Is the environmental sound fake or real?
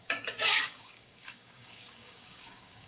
fake